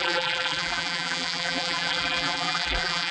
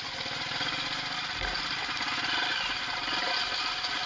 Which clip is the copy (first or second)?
first